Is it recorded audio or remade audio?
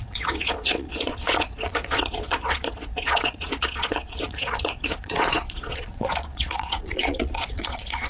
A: remade